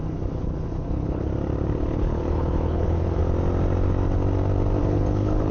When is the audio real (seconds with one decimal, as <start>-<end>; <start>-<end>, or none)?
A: 1.3-1.8; 3.2-4.8